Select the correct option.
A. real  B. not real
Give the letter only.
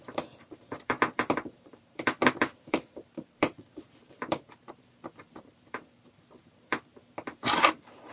B